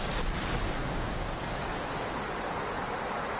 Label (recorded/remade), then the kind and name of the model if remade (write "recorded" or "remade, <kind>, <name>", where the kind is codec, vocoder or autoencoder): recorded